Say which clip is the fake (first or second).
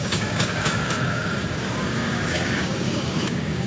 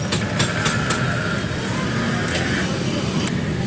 first